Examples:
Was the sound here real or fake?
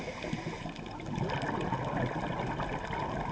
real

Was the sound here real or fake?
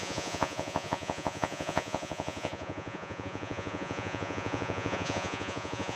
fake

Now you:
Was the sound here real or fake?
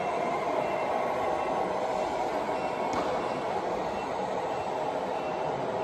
real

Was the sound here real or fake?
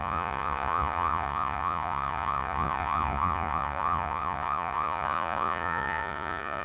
fake